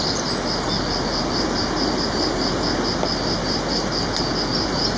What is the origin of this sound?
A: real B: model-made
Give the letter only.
A